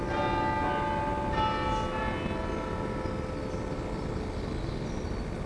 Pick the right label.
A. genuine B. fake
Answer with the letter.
A